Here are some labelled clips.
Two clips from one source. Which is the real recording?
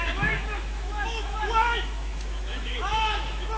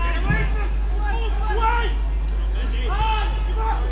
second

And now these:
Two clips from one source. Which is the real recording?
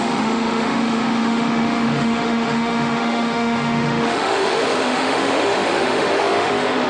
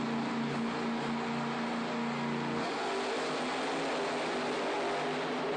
second